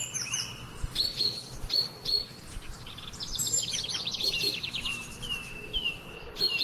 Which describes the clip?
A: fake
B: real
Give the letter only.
A